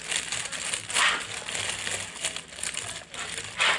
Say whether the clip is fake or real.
real